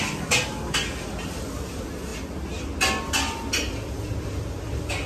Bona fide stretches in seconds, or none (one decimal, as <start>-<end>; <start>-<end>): 0.0-5.1